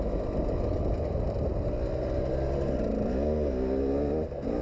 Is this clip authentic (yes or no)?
yes